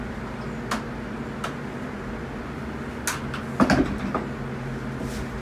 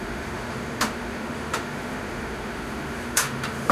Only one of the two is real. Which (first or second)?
first